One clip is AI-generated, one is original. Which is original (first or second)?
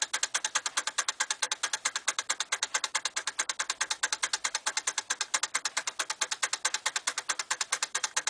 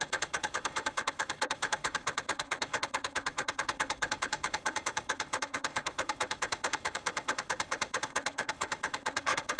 first